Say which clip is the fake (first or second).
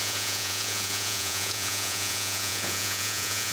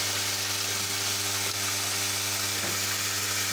first